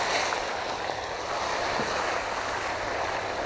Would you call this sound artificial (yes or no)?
no